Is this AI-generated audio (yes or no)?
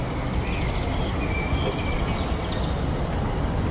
no